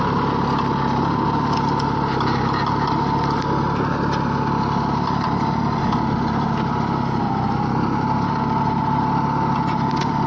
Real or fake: real